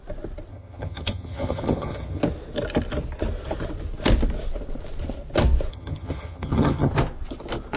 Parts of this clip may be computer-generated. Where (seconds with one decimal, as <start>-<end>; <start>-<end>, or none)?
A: 0.5-2.2; 5.7-6.9

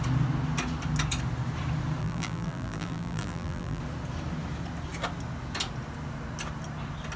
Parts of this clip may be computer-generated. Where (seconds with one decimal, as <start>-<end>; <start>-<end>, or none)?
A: 2.0-3.8

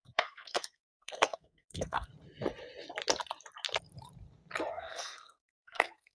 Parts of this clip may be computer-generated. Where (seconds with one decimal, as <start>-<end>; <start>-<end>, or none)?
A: 0.0-2.1; 4.7-6.1

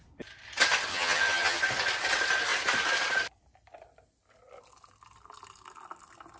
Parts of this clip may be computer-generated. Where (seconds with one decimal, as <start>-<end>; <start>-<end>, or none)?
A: 0.9-1.6